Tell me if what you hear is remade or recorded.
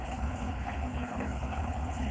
remade